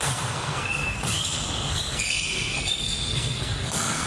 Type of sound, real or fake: fake